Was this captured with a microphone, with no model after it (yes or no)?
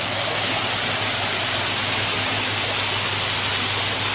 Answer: yes